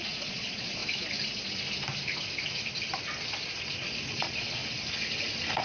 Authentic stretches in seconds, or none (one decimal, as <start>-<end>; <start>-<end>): 0.8-4.1; 4.6-5.6